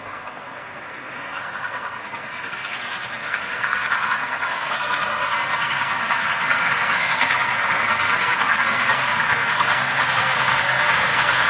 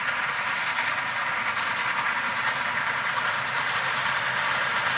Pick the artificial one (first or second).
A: first